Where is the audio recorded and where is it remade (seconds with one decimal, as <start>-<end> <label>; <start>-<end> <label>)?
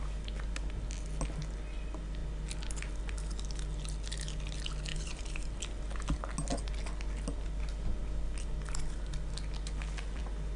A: 0.0-4.9 recorded; 4.9-5.6 remade; 5.6-10.6 recorded